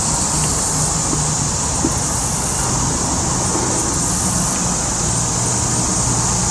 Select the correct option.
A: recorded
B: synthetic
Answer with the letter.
A